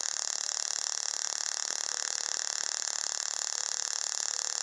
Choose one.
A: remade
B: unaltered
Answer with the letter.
B